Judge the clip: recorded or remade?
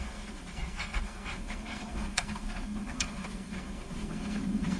remade